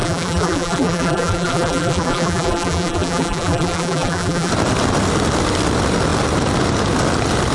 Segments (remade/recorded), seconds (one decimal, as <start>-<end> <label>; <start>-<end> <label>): 0.0-4.5 remade; 4.5-7.5 recorded